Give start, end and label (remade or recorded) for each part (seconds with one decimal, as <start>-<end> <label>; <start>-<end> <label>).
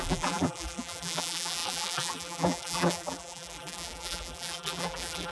0.0-5.3 remade